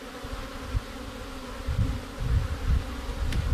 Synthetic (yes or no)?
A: no